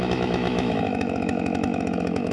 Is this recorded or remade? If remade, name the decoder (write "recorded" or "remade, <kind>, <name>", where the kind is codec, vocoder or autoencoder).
remade, autoencoder, DAC-VAE